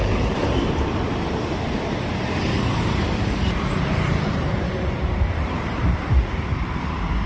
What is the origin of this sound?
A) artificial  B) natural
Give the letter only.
A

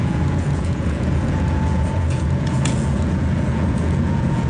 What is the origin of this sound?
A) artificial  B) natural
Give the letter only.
A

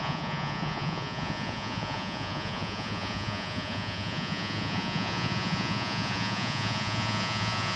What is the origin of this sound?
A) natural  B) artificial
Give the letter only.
B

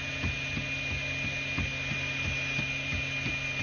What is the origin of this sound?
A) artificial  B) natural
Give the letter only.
B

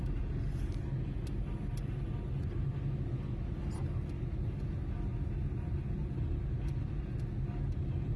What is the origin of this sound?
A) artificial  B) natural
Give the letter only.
B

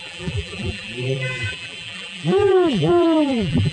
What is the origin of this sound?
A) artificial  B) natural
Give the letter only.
A